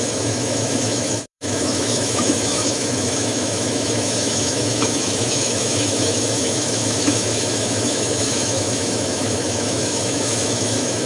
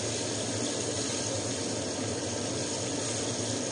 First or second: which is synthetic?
first